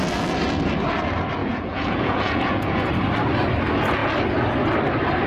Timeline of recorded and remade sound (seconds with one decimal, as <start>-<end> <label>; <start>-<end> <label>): 0.0-1.4 recorded; 1.4-2.9 remade; 2.9-5.3 recorded

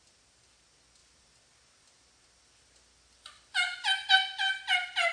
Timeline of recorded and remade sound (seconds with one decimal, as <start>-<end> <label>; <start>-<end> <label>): 0.0-5.1 recorded

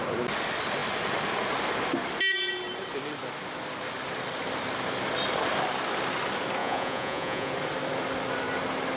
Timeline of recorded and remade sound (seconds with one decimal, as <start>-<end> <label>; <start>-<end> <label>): 0.0-6.6 recorded; 6.6-7.5 remade; 7.5-9.0 recorded

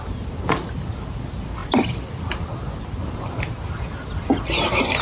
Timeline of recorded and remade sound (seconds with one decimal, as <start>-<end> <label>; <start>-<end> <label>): 0.0-5.0 recorded

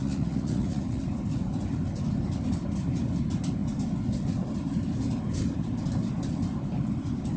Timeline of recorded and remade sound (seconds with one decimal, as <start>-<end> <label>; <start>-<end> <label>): 0.0-1.0 remade; 1.0-7.4 recorded

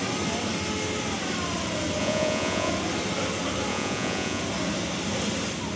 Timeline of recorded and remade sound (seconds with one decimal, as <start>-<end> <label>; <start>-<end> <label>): 0.0-2.0 recorded; 2.0-2.7 remade; 2.7-3.7 recorded; 3.7-4.4 remade; 4.4-5.8 recorded